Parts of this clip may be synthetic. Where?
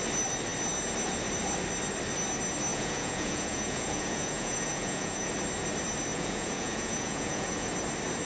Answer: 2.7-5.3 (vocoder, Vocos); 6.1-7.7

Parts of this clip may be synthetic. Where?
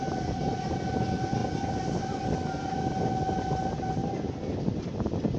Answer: none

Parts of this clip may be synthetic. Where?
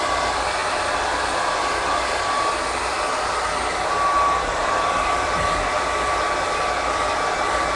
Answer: none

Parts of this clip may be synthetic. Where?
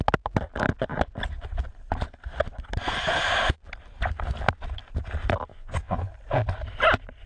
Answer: 5.5-6.1 (vocoder, Vocos)